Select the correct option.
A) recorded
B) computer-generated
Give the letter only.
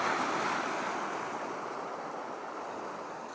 A